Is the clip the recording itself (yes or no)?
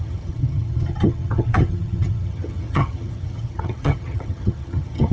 no